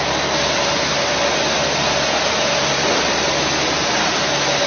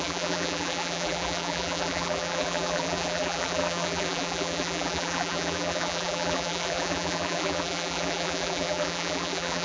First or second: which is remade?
second